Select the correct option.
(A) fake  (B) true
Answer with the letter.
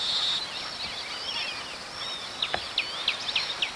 B